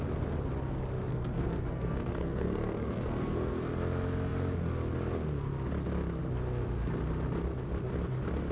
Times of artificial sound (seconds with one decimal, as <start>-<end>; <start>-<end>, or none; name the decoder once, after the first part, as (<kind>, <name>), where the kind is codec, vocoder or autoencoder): 1.1-3.7 (codec, SNAC)